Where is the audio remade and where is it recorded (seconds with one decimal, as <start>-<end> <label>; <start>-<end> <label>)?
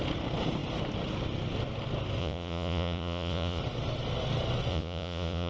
0.0-2.2 recorded; 2.2-3.6 remade; 3.6-4.7 recorded; 4.7-5.5 remade